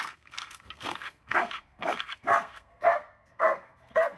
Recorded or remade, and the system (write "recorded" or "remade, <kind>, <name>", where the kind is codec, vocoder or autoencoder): remade, codec, SNAC